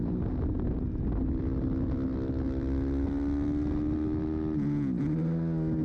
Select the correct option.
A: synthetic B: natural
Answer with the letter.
B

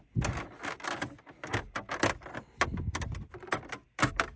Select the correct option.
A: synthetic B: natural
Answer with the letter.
B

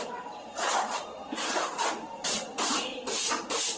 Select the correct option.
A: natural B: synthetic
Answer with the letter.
B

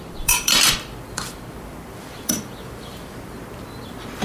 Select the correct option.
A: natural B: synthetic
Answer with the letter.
B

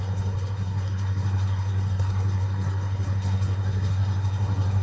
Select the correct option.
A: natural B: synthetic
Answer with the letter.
B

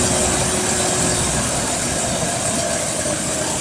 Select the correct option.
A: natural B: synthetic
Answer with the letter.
A